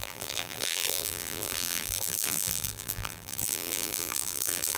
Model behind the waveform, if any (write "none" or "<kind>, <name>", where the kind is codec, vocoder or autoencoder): vocoder, BigVGAN v2